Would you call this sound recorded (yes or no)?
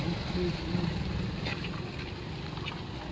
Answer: yes